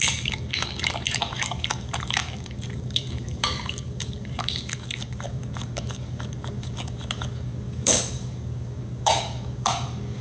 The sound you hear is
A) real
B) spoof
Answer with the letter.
B